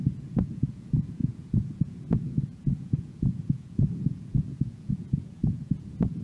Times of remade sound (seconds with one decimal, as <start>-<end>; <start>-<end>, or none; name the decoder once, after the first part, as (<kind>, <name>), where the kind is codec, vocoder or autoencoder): 0.0-6.2 (vocoder, Vocos)